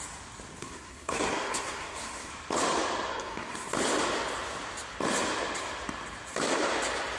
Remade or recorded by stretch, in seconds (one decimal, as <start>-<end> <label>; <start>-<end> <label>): 0.0-0.6 recorded; 0.6-2.3 remade; 2.3-3.1 recorded; 3.1-3.7 remade; 3.7-7.2 recorded

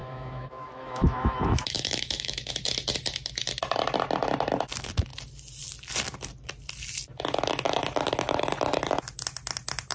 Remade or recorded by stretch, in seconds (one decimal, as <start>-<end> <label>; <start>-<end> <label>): 0.0-2.5 remade; 2.5-9.9 recorded

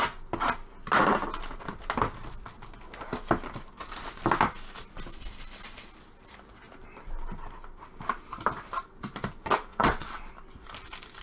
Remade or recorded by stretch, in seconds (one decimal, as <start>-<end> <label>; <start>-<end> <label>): 0.0-9.7 recorded; 9.7-10.2 remade; 10.2-11.2 recorded

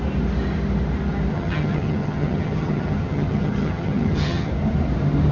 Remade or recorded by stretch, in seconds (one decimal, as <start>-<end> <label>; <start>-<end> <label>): 0.0-1.3 recorded; 1.3-4.5 remade; 4.5-5.3 recorded

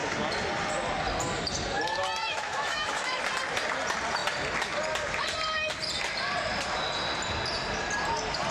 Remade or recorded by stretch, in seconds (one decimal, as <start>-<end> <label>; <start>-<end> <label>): 0.0-2.2 recorded; 2.2-3.2 remade; 3.2-8.5 recorded

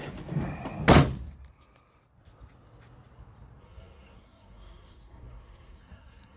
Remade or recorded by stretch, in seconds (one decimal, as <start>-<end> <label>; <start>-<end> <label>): 0.0-3.6 recorded; 3.6-6.4 remade

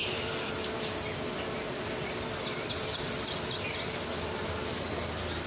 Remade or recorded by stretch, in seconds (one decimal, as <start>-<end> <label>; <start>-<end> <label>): 0.0-5.5 recorded